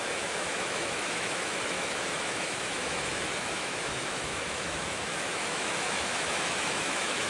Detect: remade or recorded remade